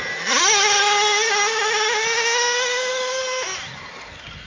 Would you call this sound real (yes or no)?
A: yes